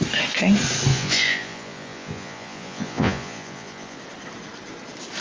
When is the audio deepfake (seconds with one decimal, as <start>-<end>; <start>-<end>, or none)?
0.9-4.0